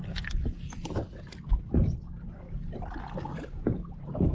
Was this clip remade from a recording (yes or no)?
no